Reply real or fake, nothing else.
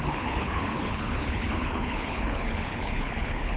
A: fake